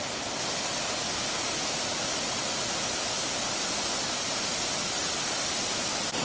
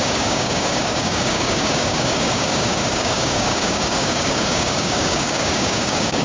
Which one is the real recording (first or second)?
first